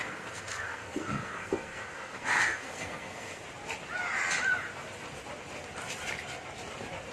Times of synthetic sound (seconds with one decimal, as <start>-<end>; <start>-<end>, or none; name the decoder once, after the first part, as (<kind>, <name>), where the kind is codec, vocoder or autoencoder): 0.0-3.4 (codec, SNAC)

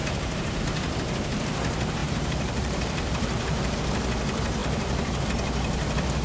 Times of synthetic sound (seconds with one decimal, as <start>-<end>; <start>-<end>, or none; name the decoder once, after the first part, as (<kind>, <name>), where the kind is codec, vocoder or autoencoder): 0.0-0.6 (vocoder, BigVGAN v2); 2.0-3.8; 4.6-5.2

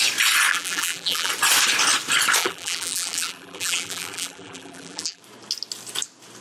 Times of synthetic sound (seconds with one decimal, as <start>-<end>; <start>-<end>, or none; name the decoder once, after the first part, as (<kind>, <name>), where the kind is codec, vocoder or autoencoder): 0.5-1.3 (vocoder, BigVGAN v2); 2.4-5.2

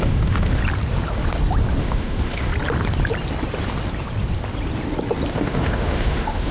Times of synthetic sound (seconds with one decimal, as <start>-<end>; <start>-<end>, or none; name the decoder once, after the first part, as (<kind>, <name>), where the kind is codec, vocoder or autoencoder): 0.0-0.6 (autoencoder, DAC-VAE); 1.8-2.5; 5.3-6.5

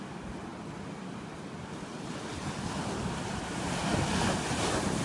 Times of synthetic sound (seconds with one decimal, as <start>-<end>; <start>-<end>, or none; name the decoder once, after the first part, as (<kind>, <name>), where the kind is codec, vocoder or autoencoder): none

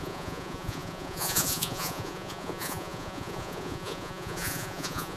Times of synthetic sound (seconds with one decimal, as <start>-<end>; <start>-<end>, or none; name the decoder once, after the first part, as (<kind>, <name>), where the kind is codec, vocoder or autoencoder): 0.0-5.2 (vocoder, Vocos)

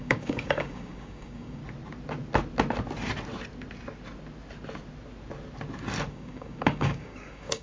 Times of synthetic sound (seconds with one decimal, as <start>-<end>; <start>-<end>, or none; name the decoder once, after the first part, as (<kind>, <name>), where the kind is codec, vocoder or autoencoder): 0.0-1.6 (codec, DAC); 6.1-7.6